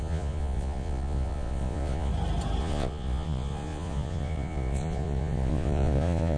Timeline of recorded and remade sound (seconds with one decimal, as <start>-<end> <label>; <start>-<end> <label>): 0.0-2.1 remade; 2.1-2.6 recorded; 2.6-6.4 remade